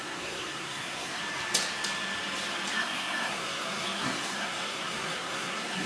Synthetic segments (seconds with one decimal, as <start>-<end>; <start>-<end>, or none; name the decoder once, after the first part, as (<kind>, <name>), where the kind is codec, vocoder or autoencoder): 0.0-1.2 (codec, SNAC); 2.7-5.9